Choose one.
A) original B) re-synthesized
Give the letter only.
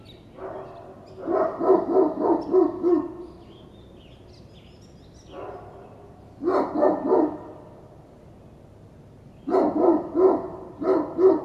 A